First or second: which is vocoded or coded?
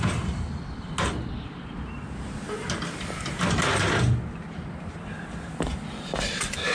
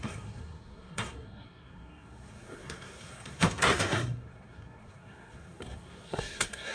second